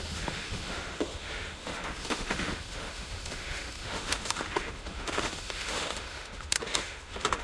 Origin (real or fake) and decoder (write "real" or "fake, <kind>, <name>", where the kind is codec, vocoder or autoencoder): fake, autoencoder, DAC-VAE